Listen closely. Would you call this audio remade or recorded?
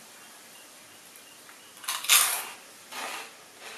recorded